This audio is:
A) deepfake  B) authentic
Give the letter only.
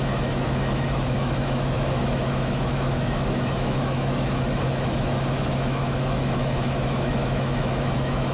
A